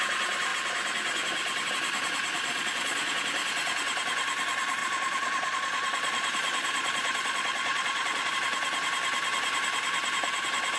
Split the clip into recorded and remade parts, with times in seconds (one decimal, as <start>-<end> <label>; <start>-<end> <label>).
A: 0.0-2.5 recorded; 2.5-3.2 remade; 3.2-4.8 recorded; 4.8-8.3 remade; 8.3-10.8 recorded